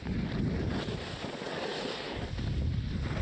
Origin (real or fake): real